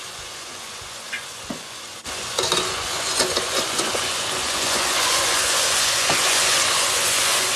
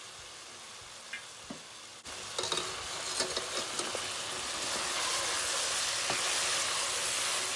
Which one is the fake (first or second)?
first